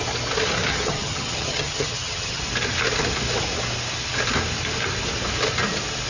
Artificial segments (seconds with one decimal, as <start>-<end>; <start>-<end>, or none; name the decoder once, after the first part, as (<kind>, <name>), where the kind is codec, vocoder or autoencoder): 0.7-2.4 (vocoder, HiFi-GAN)